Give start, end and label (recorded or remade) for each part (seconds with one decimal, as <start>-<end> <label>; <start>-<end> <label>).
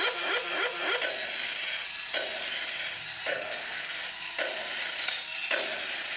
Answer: 0.0-3.3 recorded; 3.3-4.0 remade; 4.0-6.2 recorded